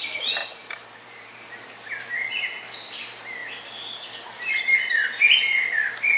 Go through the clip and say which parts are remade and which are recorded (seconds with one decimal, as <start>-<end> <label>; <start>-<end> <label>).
0.0-0.4 recorded; 0.4-1.4 remade; 1.4-6.2 recorded